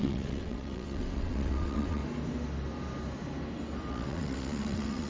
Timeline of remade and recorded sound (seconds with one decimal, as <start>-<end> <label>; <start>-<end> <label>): 0.0-2.0 remade; 2.0-3.9 recorded; 3.9-5.1 remade